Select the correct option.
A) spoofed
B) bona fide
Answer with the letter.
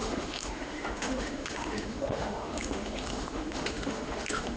A